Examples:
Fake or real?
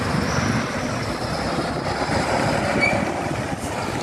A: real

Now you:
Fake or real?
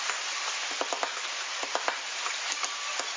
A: real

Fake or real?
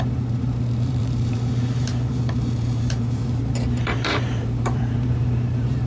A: fake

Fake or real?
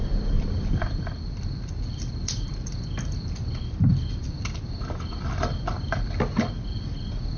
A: fake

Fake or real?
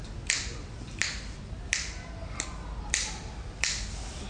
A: real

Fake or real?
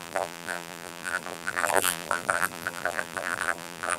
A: fake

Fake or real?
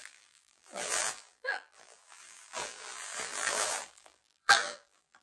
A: fake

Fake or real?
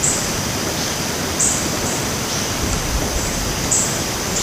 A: fake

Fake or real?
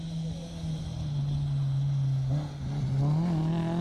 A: real